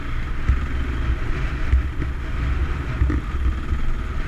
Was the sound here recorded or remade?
recorded